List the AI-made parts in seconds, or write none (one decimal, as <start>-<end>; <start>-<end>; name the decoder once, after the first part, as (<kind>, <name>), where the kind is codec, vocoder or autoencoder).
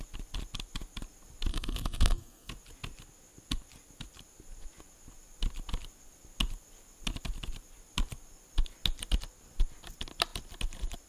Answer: 1.5-2.5 (codec, SNAC)